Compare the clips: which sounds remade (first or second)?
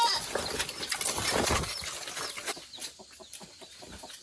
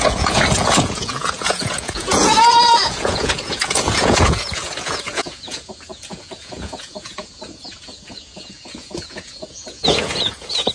second